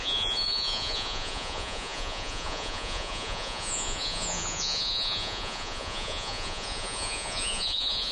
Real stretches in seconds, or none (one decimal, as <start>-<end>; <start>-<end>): none